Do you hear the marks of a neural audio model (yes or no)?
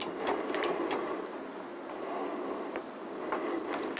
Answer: no